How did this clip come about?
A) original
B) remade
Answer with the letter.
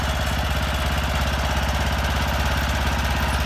A